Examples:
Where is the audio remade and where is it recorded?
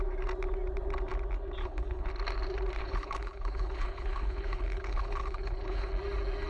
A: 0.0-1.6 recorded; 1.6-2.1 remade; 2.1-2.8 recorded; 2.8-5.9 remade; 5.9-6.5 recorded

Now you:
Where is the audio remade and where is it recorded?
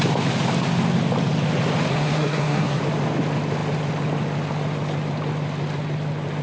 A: 0.0-1.9 recorded; 1.9-2.8 remade; 2.8-6.4 recorded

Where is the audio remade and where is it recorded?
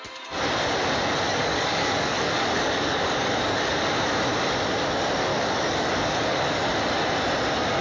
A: 0.0-1.3 recorded; 1.3-3.7 remade; 3.7-5.3 recorded; 5.3-6.7 remade; 6.7-7.8 recorded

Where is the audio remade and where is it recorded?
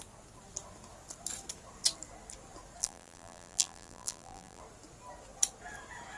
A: 0.0-2.8 recorded; 2.8-4.6 remade; 4.6-6.2 recorded